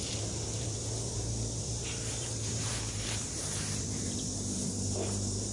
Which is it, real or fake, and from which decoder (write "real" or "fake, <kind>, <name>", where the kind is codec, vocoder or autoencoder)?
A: fake, vocoder, BigVGAN v2